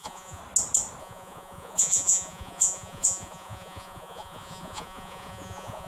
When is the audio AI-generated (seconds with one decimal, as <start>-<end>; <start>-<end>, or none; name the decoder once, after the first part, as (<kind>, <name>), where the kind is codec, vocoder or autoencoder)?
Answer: 0.0-0.4 (vocoder, Vocos); 1.0-5.9